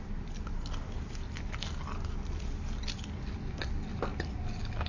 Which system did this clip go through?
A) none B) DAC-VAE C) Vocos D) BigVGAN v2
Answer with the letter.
A